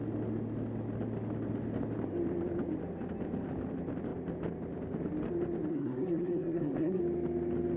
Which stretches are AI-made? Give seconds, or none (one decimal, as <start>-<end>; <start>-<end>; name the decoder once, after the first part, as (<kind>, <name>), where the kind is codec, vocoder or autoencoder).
5.7-7.0 (codec, SNAC)